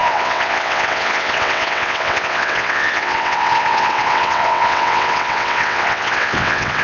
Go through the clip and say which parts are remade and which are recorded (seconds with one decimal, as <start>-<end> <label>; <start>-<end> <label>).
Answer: 0.0-6.8 remade

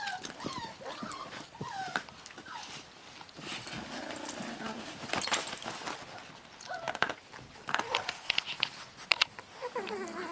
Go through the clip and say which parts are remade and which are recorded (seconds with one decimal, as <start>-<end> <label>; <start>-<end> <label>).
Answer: 0.0-10.3 recorded

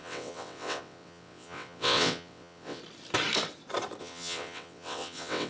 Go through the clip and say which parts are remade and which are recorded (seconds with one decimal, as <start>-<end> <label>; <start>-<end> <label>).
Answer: 0.0-2.8 remade; 2.8-4.0 recorded; 4.0-5.5 remade

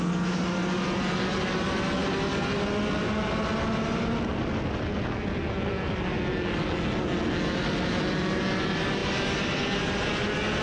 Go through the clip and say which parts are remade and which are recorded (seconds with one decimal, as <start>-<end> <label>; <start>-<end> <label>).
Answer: 0.0-10.6 recorded

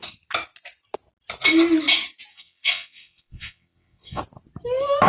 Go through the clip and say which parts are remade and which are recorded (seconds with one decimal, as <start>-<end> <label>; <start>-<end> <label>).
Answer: 0.0-2.3 recorded; 2.3-4.2 remade; 4.2-5.1 recorded